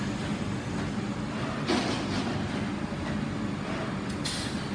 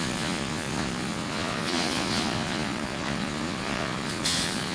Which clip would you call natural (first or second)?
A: first